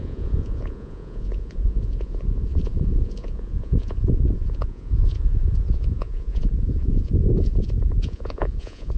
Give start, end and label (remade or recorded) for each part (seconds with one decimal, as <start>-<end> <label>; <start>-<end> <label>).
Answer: 0.0-9.0 remade